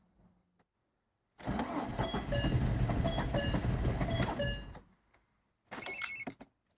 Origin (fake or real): real